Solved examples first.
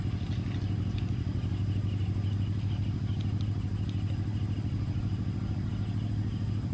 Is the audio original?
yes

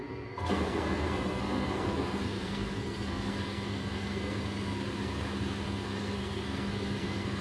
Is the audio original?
no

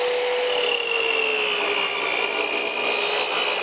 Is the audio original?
yes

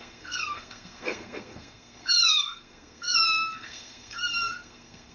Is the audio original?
no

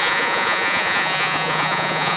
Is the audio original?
no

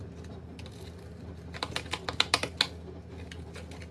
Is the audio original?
yes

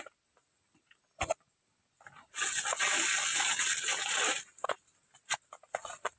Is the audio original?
yes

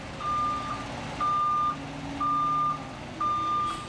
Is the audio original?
yes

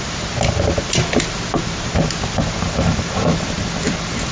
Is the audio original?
yes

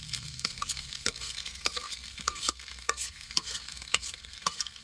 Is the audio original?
no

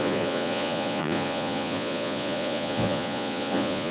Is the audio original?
no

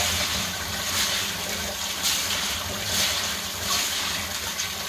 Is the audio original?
yes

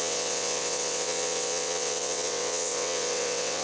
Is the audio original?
no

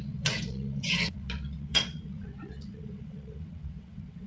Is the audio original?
no